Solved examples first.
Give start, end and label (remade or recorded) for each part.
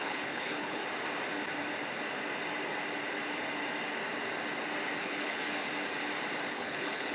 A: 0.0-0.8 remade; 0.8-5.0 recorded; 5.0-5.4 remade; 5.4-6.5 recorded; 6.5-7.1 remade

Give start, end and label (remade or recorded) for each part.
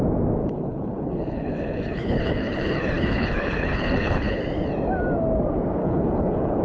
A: 0.0-0.4 recorded; 0.4-4.4 remade; 4.4-5.8 recorded; 5.8-6.6 remade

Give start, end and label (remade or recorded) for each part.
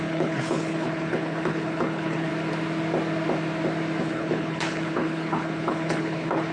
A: 0.0-2.3 remade; 2.3-4.0 recorded; 4.0-6.5 remade